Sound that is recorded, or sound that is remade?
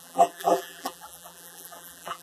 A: remade